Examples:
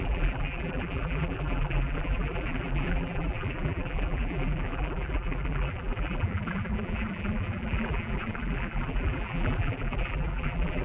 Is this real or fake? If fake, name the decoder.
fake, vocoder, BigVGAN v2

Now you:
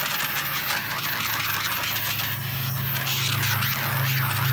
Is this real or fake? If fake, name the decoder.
real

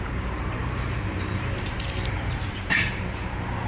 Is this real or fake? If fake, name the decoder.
fake, vocoder, BigVGAN v2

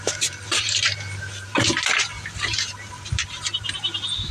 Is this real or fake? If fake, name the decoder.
fake, vocoder, BigVGAN v2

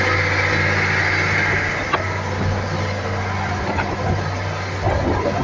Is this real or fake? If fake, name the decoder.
real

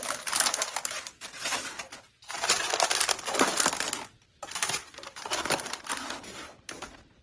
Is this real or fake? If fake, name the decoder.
real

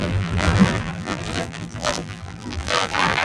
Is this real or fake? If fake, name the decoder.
fake, vocoder, BigVGAN v2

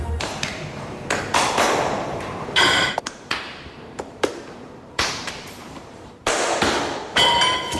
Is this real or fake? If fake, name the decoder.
fake, vocoder, BigVGAN v2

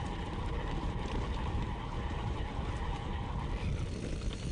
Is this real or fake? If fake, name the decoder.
fake, vocoder, BigVGAN v2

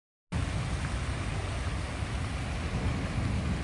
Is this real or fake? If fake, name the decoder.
real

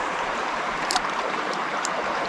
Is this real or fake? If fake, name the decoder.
fake, vocoder, BigVGAN v2